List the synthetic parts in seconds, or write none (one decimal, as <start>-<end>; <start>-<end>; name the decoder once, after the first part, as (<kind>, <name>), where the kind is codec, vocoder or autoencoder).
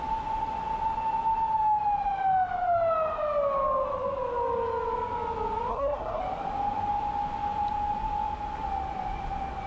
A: 5.7-6.2 (codec, SNAC)